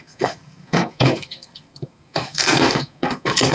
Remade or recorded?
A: remade